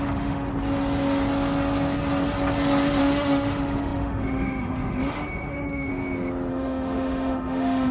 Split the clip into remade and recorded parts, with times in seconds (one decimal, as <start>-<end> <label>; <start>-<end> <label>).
0.0-0.5 remade; 0.5-3.0 recorded; 3.0-5.9 remade; 5.9-6.5 recorded; 6.5-7.9 remade

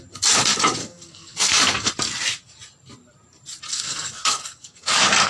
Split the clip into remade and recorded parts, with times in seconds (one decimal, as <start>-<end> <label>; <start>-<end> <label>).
0.0-0.8 recorded; 0.8-1.9 remade; 1.9-3.7 recorded; 3.7-5.3 remade

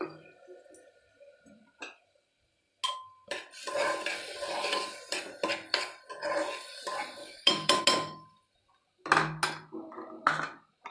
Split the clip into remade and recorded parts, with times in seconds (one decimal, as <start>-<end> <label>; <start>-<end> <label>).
0.0-7.2 recorded; 7.2-7.8 remade; 7.8-10.9 recorded

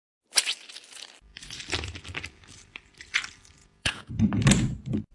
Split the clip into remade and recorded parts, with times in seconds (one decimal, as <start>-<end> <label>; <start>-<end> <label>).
0.0-3.6 recorded; 3.6-4.1 remade; 4.1-5.1 recorded